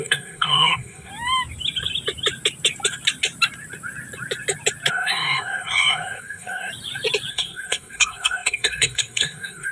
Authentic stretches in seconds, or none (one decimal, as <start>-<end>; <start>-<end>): 1.1-4.9; 6.7-7.3